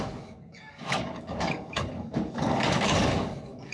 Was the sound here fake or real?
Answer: fake